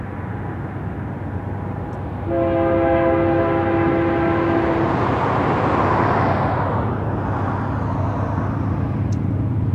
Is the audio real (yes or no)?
yes